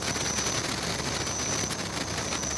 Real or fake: real